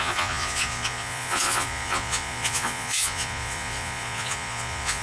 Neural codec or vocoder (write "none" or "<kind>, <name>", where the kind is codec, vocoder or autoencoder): vocoder, Vocos